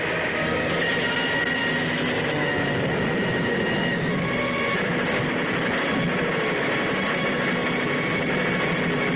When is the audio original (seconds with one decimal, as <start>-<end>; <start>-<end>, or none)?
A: 0.0-9.2